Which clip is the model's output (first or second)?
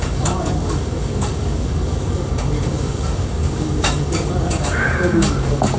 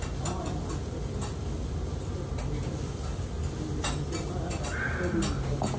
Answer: first